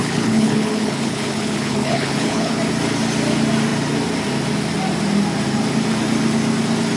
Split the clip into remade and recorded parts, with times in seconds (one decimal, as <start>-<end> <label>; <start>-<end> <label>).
0.0-2.6 remade; 2.6-7.0 recorded